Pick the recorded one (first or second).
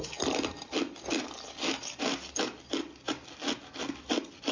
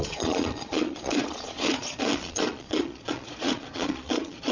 first